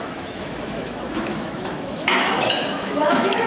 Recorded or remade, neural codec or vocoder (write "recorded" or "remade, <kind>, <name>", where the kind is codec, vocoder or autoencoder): remade, autoencoder, DAC-VAE